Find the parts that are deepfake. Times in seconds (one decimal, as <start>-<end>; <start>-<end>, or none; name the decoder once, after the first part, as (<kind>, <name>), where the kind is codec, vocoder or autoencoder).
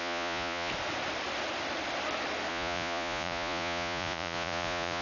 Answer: 0.0-0.7 (vocoder, Vocos); 2.5-5.0